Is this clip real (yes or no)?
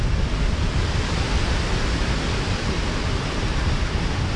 no